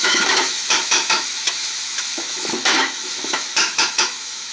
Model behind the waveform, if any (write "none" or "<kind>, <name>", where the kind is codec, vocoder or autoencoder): autoencoder, DAC-VAE